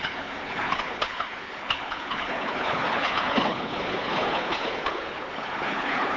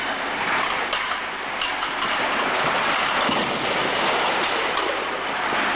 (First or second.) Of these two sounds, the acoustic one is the second